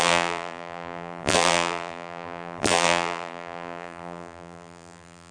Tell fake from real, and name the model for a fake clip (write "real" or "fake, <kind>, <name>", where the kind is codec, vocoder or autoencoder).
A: fake, vocoder, BigVGAN v2